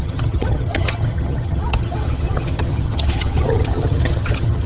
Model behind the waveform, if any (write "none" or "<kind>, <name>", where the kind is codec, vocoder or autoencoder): vocoder, HiFi-GAN